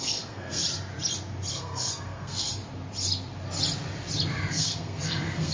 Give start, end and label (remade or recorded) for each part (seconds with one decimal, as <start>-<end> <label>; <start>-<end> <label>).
0.0-0.6 remade; 0.6-1.5 recorded; 1.5-2.6 remade; 2.6-4.5 recorded; 4.5-5.5 remade